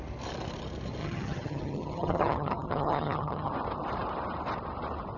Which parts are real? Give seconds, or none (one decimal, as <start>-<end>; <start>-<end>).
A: 0.0-1.0; 3.5-5.2

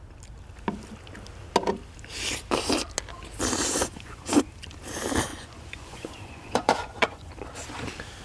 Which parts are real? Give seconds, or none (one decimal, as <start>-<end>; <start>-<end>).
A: 0.0-3.8; 4.5-5.3; 7.3-8.2

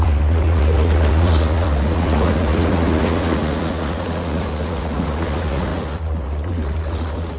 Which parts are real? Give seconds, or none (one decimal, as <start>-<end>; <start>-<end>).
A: none

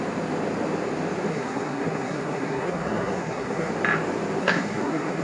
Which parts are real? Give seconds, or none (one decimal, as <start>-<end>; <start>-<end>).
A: 0.0-1.3; 3.7-4.4

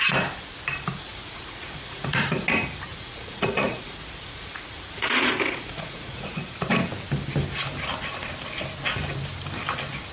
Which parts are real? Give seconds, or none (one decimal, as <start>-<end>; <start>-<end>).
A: 0.0-1.1; 2.2-2.9; 6.6-10.1

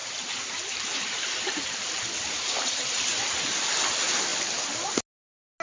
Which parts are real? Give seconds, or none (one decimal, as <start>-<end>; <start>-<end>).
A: 3.4-5.6